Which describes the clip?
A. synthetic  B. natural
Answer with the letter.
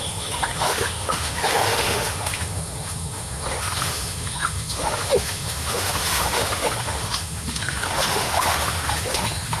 A